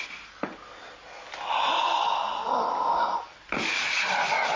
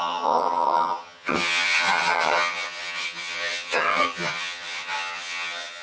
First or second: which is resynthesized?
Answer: second